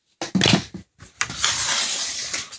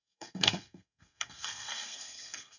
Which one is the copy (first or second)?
second